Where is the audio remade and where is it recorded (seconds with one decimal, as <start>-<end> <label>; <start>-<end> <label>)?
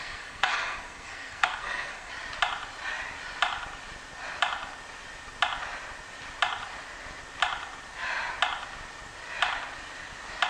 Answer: 0.0-2.1 remade; 2.1-10.5 recorded